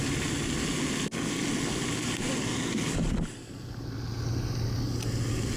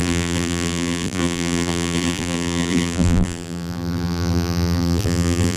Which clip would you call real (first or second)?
first